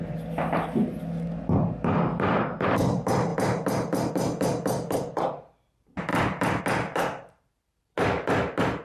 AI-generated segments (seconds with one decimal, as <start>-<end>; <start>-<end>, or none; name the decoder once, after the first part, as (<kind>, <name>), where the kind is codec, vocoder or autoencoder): 6.1-6.6 (vocoder, BigVGAN v2)